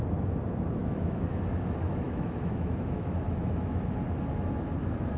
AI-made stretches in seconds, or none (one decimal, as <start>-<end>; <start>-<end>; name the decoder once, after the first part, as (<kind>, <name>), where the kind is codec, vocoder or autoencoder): 0.8-1.4 (autoencoder, DAC-VAE); 1.8-3.9